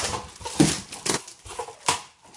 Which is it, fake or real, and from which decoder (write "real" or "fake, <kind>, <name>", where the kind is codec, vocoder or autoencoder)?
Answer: real